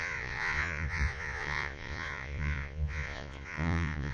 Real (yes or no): no